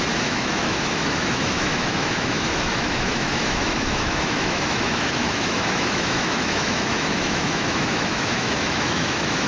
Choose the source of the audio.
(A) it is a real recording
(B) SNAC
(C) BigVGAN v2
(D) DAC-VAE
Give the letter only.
D